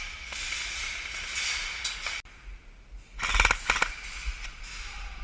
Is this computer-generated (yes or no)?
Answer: no